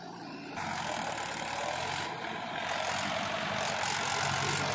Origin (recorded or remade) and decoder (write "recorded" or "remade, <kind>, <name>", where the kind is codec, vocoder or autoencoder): recorded